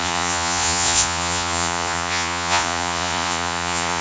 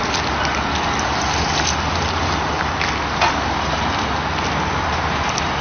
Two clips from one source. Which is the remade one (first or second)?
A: first